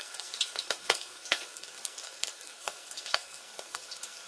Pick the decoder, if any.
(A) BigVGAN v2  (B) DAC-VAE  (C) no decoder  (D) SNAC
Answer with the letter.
D